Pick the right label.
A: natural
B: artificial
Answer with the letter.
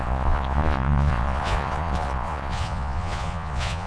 B